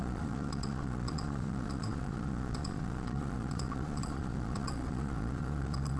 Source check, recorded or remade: remade